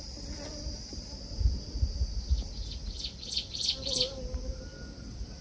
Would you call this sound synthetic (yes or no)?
no